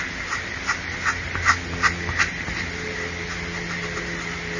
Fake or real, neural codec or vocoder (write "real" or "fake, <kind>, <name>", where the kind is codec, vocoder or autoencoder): real